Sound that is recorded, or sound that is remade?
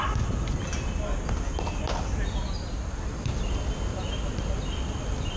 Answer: recorded